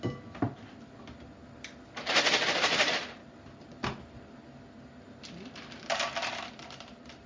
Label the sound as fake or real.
real